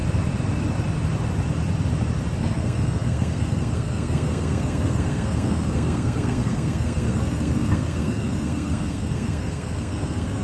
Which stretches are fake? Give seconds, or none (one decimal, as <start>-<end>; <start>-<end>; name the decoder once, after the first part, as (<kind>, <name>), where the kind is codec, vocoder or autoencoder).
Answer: 2.4-10.4 (codec, SNAC)